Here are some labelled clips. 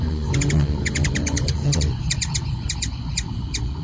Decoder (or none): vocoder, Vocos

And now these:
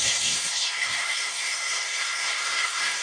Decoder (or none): codec, SNAC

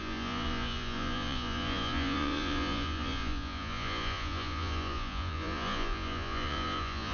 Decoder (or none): vocoder, Vocos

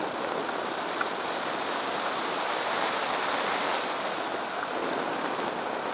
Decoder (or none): none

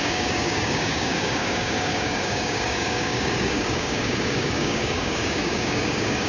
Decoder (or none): codec, DAC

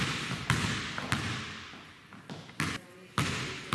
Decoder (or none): none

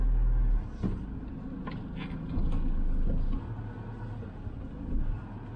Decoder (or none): none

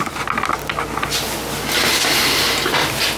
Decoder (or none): none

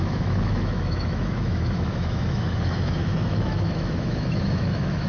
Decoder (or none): autoencoder, DAC-VAE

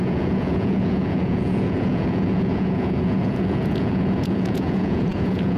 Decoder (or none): vocoder, Vocos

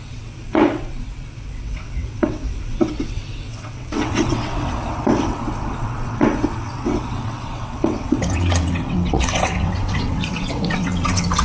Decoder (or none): vocoder, WaveNeXt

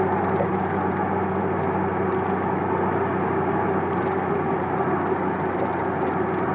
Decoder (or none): none